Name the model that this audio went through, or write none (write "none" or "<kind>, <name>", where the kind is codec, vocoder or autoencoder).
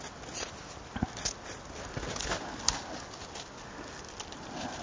none